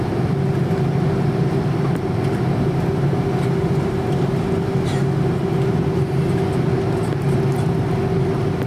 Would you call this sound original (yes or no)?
yes